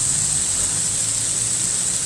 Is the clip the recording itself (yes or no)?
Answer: yes